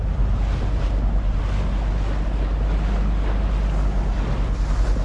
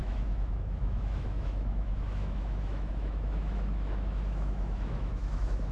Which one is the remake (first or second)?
second